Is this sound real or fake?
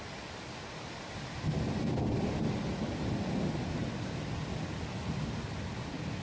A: real